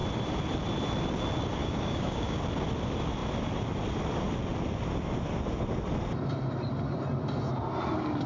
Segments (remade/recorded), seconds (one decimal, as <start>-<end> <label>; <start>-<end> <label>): 0.0-1.6 recorded; 1.6-2.4 remade; 2.4-8.3 recorded